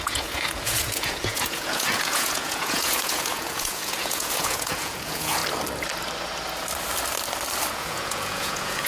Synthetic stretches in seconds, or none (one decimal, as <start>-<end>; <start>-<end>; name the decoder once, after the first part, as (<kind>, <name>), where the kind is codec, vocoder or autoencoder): 0.0-5.4 (vocoder, Vocos); 7.7-8.9